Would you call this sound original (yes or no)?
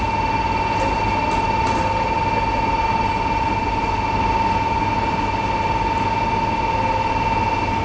yes